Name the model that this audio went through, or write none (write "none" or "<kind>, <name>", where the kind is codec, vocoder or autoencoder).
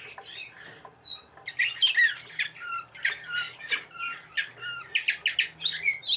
none